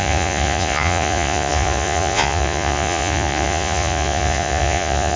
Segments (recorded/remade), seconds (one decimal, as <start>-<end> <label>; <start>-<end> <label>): 0.0-5.2 remade